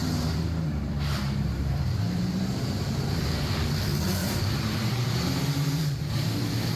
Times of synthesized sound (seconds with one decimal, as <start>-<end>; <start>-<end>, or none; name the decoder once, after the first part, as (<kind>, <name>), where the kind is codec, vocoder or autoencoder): 0.0-3.4 (vocoder, BigVGAN v2); 4.2-6.8